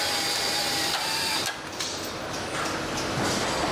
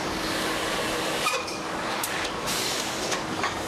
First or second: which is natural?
first